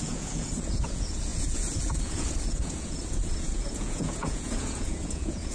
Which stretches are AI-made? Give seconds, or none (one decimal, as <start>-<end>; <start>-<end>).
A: 0.0-5.5